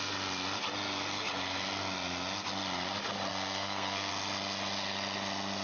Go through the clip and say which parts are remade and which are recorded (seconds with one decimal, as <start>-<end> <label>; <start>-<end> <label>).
0.0-3.3 recorded; 3.3-4.1 remade; 4.1-5.6 recorded